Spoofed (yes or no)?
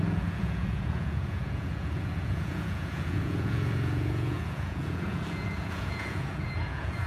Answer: yes